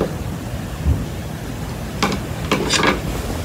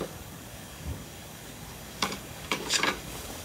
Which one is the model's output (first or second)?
second